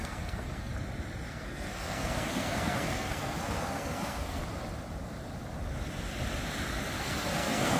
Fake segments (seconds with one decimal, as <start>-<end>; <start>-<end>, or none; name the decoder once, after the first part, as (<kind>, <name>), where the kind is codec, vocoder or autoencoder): 0.0-0.7 (codec, SNAC); 1.3-4.4; 7.0-7.8

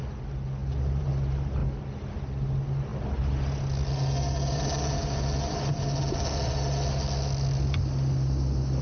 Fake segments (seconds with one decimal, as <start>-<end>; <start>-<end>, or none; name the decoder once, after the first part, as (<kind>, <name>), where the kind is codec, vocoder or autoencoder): 0.6-1.1 (vocoder, BigVGAN v2)

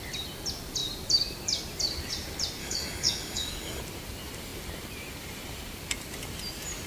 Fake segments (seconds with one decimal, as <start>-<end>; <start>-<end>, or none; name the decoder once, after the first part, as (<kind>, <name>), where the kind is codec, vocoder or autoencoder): 2.6-3.8 (codec, DAC)

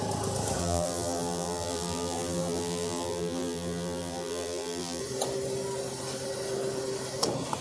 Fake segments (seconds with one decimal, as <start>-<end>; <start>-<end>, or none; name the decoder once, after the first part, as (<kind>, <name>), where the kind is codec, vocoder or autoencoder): 0.6-5.0 (vocoder, BigVGAN v2)